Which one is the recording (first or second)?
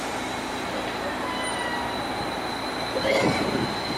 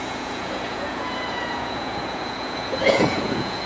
first